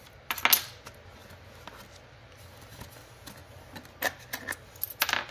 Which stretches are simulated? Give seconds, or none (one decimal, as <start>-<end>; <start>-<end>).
none